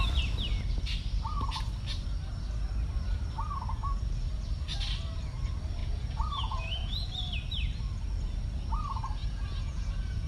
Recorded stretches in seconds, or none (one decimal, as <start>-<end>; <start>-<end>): 0.0-5.8; 7.1-9.2

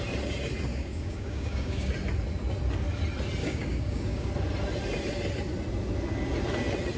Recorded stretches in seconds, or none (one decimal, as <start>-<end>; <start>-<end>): 0.0-0.7; 1.9-3.4; 4.3-7.0